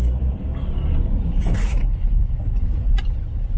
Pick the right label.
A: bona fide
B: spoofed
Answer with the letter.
B